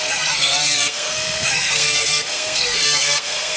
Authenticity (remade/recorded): remade